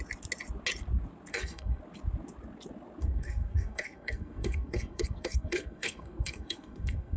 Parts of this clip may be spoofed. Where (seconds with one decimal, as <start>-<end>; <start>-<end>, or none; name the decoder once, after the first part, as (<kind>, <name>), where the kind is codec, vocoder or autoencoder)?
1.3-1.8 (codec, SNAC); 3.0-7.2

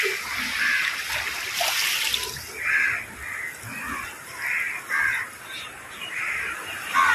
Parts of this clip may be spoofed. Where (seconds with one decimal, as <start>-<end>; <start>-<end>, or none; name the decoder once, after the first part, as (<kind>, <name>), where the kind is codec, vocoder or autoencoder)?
none

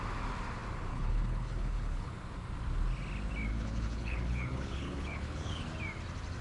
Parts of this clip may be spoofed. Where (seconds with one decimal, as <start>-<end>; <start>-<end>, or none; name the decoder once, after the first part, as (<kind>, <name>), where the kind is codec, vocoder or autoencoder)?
0.9-2.1 (codec, HILCodec); 3.5-5.6